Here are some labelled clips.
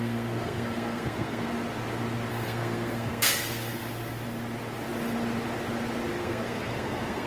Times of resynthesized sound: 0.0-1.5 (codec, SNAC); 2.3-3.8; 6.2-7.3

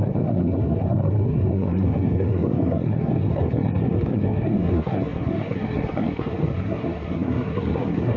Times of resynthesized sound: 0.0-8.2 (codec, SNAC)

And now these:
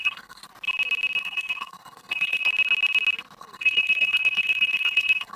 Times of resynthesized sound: 0.0-0.4 (codec, SNAC); 1.2-2.5; 3.4-5.4